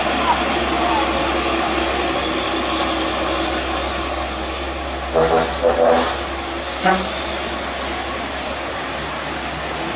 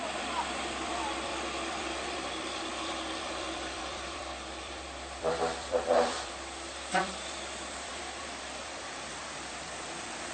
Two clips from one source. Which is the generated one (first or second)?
second